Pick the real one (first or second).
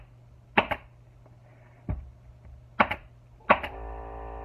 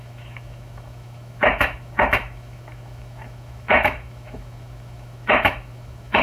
first